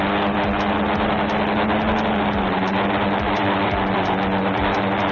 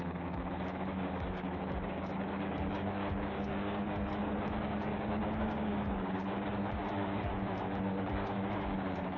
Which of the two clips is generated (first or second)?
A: second